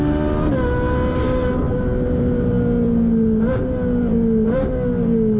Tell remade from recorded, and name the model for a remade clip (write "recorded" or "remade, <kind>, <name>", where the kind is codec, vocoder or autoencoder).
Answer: recorded